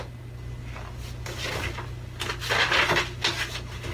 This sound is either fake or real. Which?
real